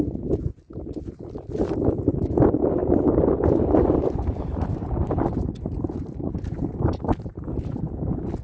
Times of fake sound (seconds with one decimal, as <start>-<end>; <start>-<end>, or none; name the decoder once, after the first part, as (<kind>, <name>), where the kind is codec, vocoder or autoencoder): 2.8-7.8 (vocoder, BigVGAN v2)

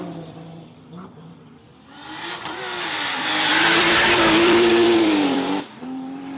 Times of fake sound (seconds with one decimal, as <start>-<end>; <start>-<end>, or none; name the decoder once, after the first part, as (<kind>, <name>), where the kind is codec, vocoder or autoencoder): 0.0-6.4 (vocoder, BigVGAN v2)

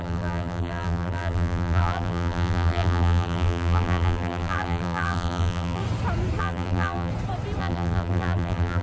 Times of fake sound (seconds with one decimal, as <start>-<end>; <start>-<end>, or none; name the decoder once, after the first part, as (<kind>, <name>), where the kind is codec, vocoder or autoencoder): 0.0-5.8 (vocoder, BigVGAN v2); 6.4-7.1; 7.6-8.8

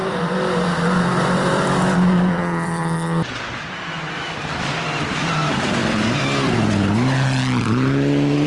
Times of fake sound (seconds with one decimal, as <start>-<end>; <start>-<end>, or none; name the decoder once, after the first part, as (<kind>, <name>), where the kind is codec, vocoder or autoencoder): 0.0-2.8 (vocoder, BigVGAN v2); 3.8-5.8